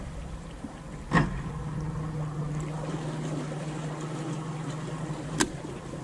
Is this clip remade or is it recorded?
recorded